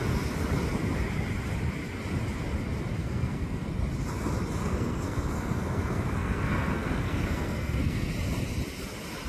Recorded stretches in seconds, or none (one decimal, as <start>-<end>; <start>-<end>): 0.0-3.0; 3.7-4.6; 8.1-9.3